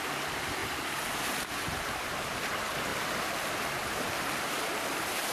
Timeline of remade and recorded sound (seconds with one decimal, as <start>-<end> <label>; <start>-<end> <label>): 0.0-2.9 remade; 2.9-3.7 recorded; 3.7-5.3 remade